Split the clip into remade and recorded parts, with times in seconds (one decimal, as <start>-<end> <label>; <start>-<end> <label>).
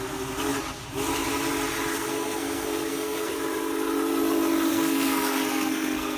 0.0-1.9 recorded; 1.9-3.3 remade; 3.3-4.7 recorded; 4.7-6.2 remade